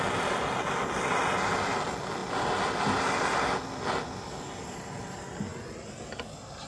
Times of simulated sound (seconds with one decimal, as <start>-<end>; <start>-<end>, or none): none